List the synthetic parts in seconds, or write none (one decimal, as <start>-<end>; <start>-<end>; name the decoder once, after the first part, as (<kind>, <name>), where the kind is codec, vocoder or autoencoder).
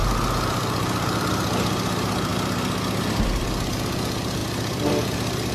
none